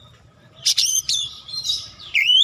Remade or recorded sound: remade